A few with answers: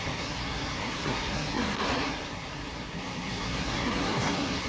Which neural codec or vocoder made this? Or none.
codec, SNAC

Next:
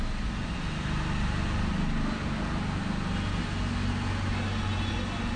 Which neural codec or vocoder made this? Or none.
none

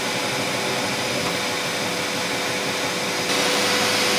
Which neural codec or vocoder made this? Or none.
none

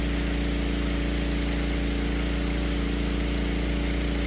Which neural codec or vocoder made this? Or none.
none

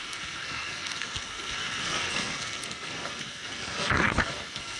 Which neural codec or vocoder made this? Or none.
codec, SNAC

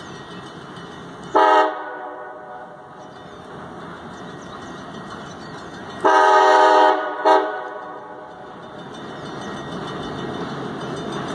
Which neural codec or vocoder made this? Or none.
none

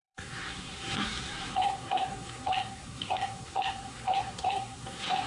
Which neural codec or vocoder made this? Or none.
codec, SNAC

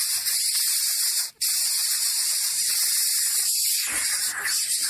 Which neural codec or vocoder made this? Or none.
none